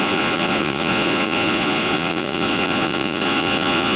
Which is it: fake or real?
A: fake